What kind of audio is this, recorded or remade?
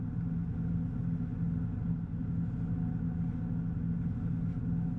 recorded